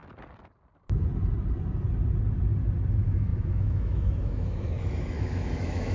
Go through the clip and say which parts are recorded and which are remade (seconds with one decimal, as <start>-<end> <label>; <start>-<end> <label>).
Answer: 0.0-2.9 recorded; 2.9-5.9 remade